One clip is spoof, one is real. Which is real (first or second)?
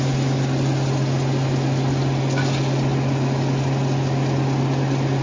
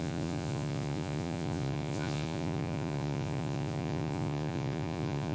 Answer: first